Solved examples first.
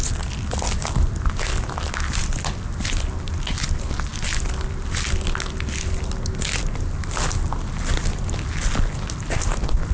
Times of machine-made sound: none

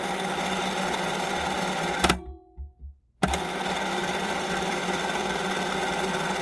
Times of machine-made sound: 4.0-5.3 (vocoder, BigVGAN v2)

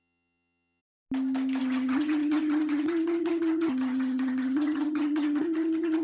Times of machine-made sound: 0.0-0.8 (vocoder, HiFi-GAN); 1.6-6.0

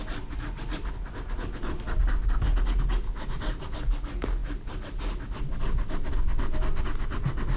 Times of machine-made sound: none

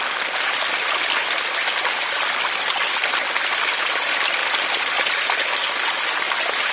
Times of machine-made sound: none